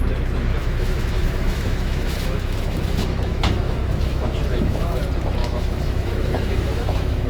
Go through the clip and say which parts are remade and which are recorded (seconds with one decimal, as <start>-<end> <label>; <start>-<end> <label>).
0.0-0.6 recorded; 0.6-5.0 remade; 5.0-5.4 recorded; 5.4-7.3 remade